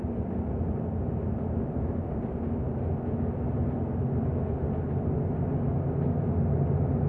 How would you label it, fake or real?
real